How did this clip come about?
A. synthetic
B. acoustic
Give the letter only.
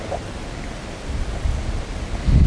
B